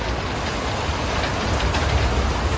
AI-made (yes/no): no